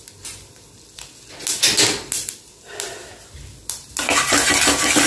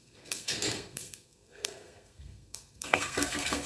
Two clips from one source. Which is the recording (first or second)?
first